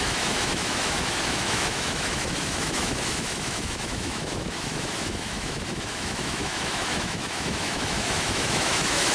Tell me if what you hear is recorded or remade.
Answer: remade